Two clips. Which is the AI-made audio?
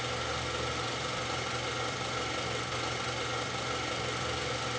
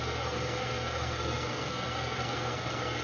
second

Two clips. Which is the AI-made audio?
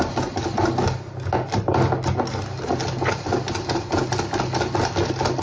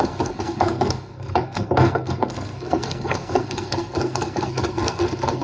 second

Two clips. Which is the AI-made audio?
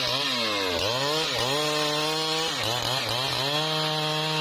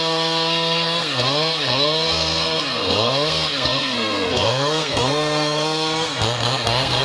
second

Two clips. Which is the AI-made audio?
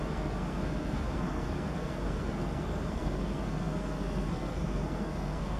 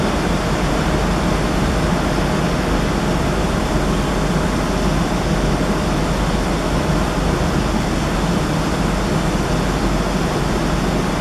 first